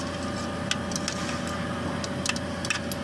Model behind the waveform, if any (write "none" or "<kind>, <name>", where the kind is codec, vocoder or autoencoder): none